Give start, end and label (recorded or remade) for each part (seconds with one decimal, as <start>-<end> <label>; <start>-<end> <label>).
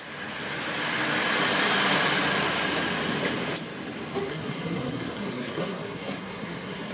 0.0-4.3 recorded; 4.3-6.9 remade